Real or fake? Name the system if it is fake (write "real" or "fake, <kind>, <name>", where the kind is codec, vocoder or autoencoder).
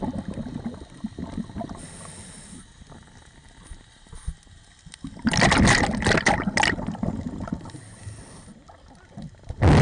real